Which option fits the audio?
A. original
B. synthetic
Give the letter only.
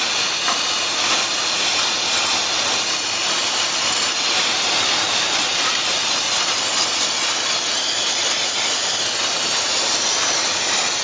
A